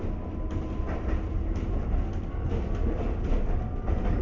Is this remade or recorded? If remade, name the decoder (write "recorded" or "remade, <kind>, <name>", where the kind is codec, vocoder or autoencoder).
recorded